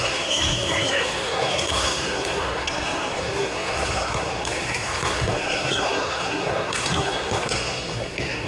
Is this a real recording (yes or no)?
no